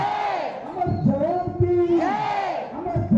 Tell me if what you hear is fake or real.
real